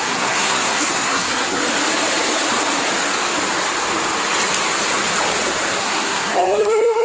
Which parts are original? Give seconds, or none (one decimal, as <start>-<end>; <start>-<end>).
1.6-5.8